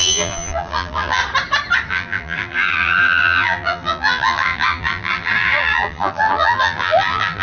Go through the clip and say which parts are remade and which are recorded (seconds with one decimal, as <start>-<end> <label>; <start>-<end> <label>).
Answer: 0.0-1.2 remade; 1.2-1.9 recorded; 1.9-7.4 remade